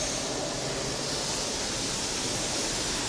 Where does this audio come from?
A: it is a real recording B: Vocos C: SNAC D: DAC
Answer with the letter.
A